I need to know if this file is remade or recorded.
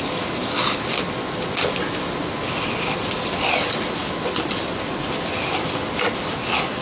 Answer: recorded